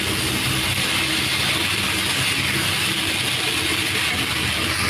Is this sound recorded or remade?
recorded